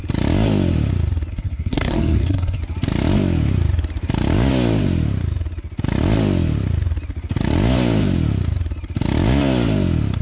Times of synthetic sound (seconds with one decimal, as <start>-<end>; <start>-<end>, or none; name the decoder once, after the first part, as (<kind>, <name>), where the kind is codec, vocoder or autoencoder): 1.3-2.6 (codec, SNAC)